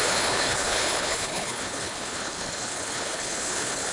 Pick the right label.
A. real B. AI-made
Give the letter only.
B